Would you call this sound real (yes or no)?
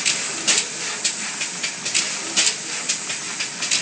yes